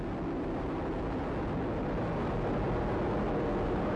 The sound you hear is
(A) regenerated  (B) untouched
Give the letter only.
B